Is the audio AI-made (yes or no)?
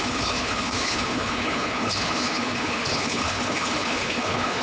yes